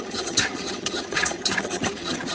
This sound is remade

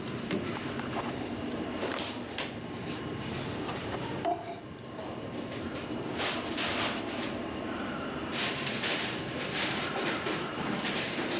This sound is remade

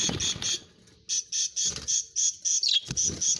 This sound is recorded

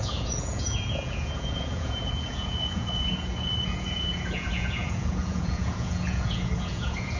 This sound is remade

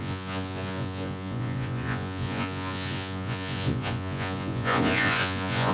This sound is remade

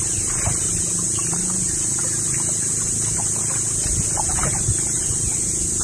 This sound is recorded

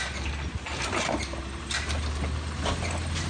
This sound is recorded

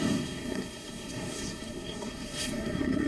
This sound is remade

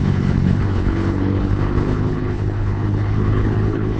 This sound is remade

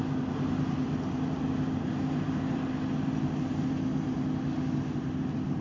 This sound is recorded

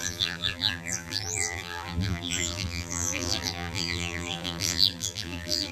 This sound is remade